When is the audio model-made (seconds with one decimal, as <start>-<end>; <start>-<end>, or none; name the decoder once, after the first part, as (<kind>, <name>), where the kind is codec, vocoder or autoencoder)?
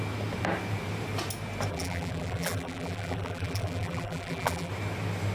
1.7-4.7 (vocoder, BigVGAN v2)